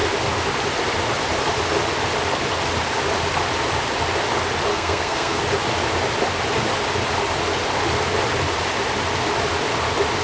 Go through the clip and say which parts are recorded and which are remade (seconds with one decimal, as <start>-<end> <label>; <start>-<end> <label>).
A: 0.0-4.7 recorded; 4.7-5.4 remade; 5.4-10.2 recorded